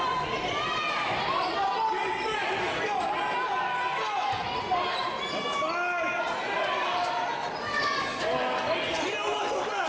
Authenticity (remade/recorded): recorded